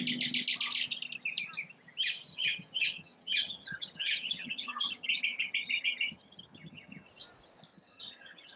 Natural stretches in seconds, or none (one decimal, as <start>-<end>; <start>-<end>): 0.0-2.3; 7.1-7.7